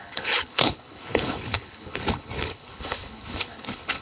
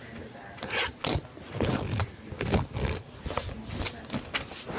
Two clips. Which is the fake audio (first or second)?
first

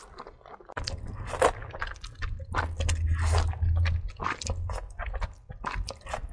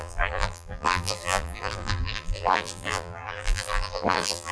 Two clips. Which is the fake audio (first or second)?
second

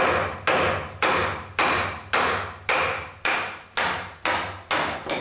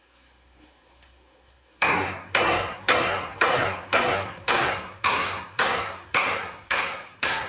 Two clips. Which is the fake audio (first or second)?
second